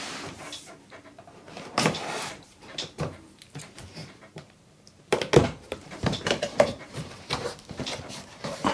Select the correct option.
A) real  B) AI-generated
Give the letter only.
B